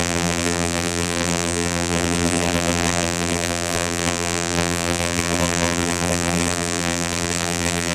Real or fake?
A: fake